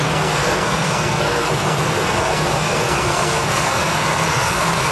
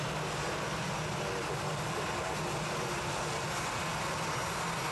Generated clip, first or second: first